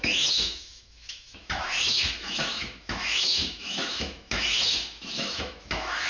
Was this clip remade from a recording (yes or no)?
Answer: yes